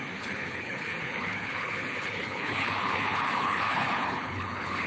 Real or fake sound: fake